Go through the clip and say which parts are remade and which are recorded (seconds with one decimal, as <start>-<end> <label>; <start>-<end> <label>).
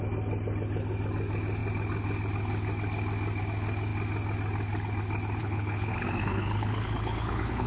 0.0-5.4 recorded; 5.4-7.7 remade